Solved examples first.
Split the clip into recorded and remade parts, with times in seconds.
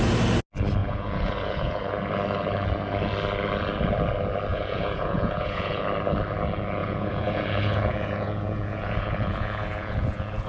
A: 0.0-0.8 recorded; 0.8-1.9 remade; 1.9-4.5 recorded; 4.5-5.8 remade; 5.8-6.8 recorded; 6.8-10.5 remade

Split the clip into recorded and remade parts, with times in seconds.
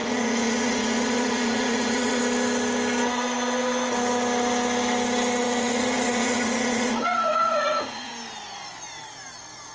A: 0.0-2.2 remade; 2.2-5.4 recorded; 5.4-8.1 remade; 8.1-9.7 recorded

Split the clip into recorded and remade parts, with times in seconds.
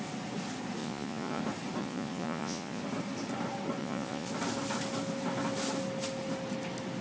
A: 0.0-0.8 recorded; 0.8-1.4 remade; 1.4-1.8 recorded; 1.8-2.8 remade; 2.8-3.8 recorded; 3.8-4.3 remade; 4.3-7.0 recorded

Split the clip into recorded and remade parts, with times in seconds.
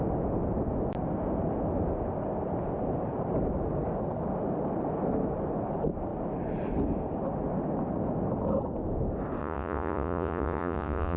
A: 0.0-9.4 recorded; 9.4-11.2 remade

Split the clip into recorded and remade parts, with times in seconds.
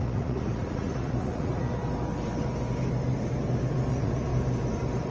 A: 0.0-1.8 remade; 1.8-3.9 recorded; 3.9-4.3 remade; 4.3-5.1 recorded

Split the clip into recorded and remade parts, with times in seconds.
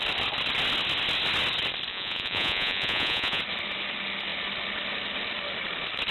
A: 0.0-1.9 recorded; 1.9-3.4 remade; 3.4-6.1 recorded